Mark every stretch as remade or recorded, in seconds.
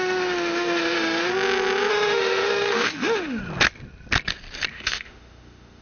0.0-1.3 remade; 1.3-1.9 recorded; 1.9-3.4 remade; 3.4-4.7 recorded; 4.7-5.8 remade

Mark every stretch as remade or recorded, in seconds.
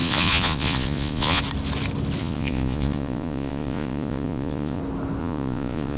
0.0-1.4 remade; 1.4-2.2 recorded; 2.2-4.8 remade; 4.8-5.2 recorded; 5.2-6.0 remade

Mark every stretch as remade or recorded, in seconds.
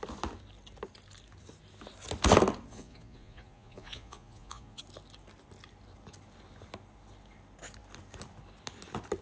0.0-2.7 recorded; 2.7-4.8 remade; 4.8-9.2 recorded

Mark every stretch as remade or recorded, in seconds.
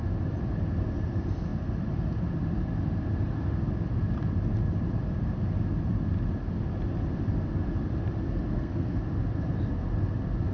0.0-8.5 recorded; 8.5-9.0 remade; 9.0-10.5 recorded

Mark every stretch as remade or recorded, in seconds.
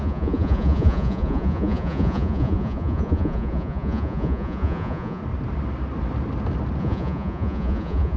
0.0-5.2 remade; 5.2-6.8 recorded; 6.8-8.2 remade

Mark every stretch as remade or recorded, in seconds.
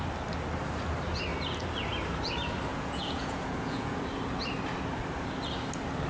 0.0-2.7 recorded; 2.7-4.0 remade; 4.0-6.1 recorded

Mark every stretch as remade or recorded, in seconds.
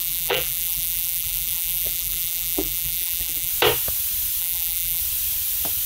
0.0-3.5 remade; 3.5-4.4 recorded; 4.4-5.0 remade; 5.0-5.9 recorded